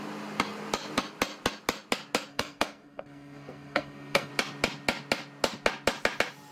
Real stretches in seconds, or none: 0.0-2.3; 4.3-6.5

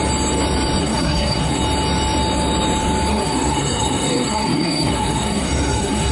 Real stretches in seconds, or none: 0.0-0.8; 1.6-3.1

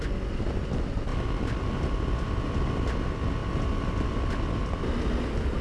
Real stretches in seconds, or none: 0.0-5.6

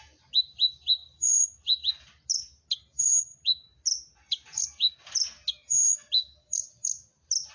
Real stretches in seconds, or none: 0.0-7.5

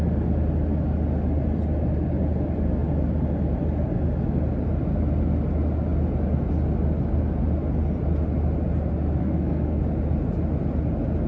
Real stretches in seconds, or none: 0.0-9.2; 9.8-11.3

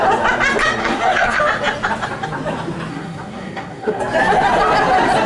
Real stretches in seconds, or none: 0.0-0.8; 1.4-2.9; 4.0-5.3

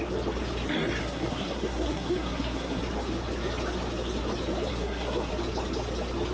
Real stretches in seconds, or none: 0.0-1.0; 2.8-4.7; 5.3-6.3

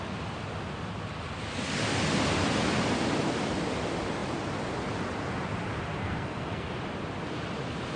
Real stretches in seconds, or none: 0.0-6.0; 6.7-8.0